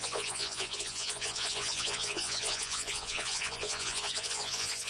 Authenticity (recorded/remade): remade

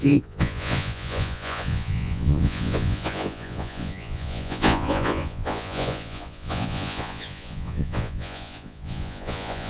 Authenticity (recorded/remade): remade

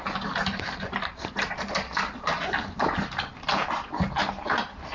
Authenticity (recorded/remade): recorded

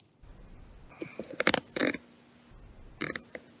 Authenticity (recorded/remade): recorded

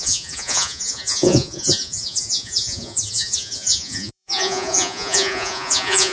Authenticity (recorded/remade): remade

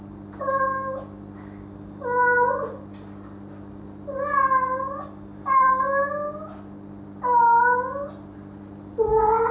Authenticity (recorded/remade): recorded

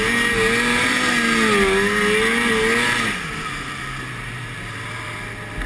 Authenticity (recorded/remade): recorded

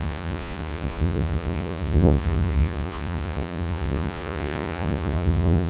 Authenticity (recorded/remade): remade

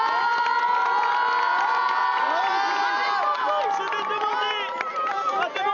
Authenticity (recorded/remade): recorded